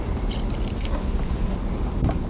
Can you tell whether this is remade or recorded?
recorded